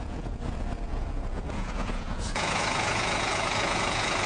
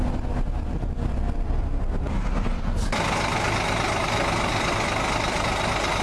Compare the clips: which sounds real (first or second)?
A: second